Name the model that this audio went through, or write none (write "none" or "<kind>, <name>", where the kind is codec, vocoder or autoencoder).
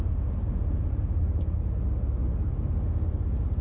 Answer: none